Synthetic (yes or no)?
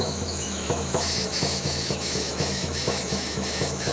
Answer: yes